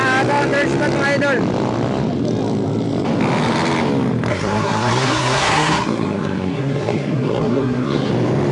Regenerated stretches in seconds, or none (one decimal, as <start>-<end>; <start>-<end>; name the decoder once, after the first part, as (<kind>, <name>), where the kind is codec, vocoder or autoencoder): 4.3-8.1 (codec, SNAC)